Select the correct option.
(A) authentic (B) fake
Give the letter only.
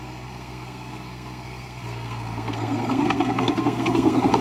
B